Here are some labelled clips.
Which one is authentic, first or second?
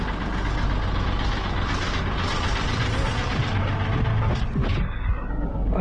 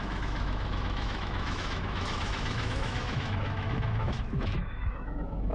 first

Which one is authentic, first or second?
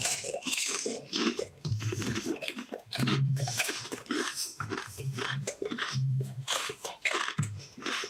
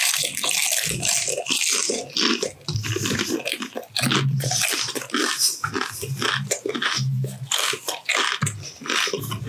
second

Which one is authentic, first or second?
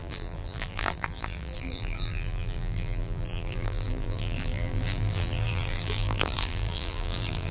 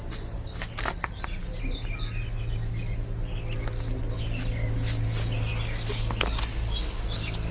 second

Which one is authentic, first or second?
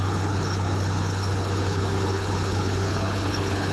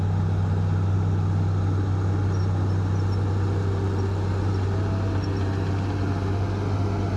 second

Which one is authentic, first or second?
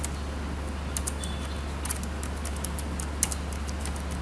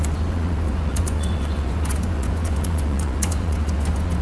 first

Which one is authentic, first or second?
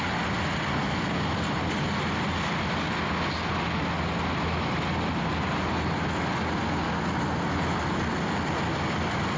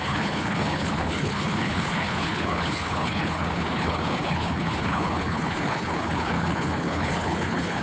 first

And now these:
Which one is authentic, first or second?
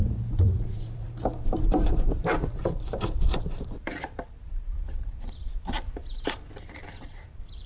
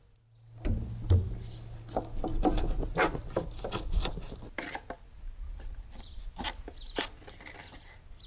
second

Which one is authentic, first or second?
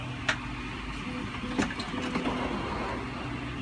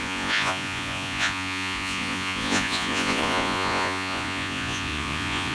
first